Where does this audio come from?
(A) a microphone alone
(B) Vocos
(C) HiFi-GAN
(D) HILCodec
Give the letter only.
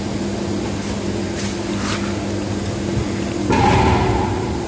A